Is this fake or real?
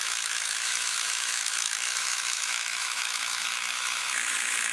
fake